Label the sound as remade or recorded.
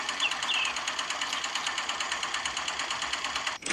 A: recorded